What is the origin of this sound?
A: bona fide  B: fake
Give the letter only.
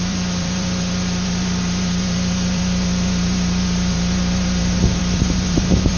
B